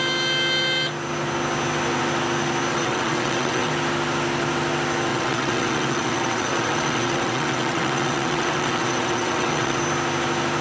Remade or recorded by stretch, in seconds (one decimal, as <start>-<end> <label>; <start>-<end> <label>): 0.0-2.7 recorded; 2.7-3.7 remade; 3.7-5.1 recorded; 5.1-9.8 remade; 9.8-10.6 recorded